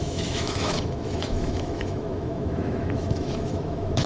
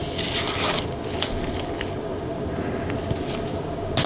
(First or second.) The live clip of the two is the second